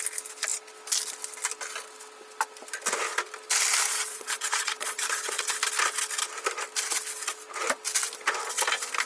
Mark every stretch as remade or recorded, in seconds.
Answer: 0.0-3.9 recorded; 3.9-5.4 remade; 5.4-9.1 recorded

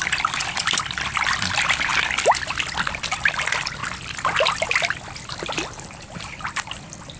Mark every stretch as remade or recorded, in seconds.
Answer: 0.0-3.8 remade; 3.8-5.3 recorded; 5.3-7.2 remade

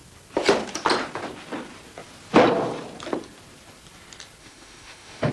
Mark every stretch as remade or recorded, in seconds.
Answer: 0.0-4.4 recorded; 4.4-5.3 remade

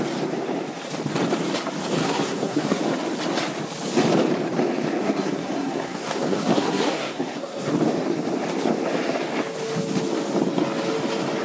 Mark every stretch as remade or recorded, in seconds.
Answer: 0.0-2.0 recorded; 2.0-2.8 remade; 2.8-5.0 recorded; 5.0-7.7 remade; 7.7-11.4 recorded

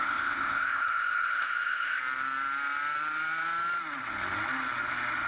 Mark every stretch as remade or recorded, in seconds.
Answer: 0.0-2.0 remade; 2.0-5.3 recorded

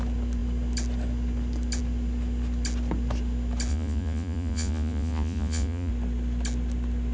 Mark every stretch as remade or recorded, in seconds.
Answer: 0.0-3.7 recorded; 3.7-5.9 remade; 5.9-7.1 recorded

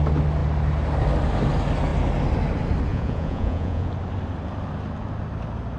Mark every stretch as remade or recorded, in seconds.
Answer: 0.0-2.9 recorded; 2.9-3.9 remade; 3.9-5.8 recorded